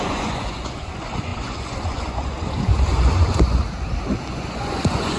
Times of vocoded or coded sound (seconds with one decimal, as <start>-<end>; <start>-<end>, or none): 0.0-3.6; 4.3-5.2